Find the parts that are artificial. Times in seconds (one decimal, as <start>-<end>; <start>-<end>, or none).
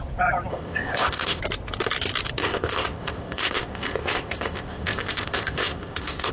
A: 0.5-1.4; 2.4-6.3